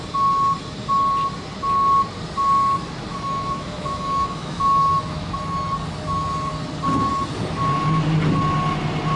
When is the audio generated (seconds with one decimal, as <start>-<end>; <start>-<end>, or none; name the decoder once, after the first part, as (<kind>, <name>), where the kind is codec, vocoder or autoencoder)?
3.1-5.3 (autoencoder, DAC-VAE)